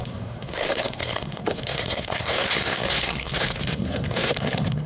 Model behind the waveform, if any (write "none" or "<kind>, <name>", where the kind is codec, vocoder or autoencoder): codec, SNAC